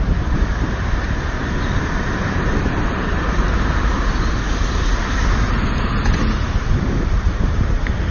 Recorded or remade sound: remade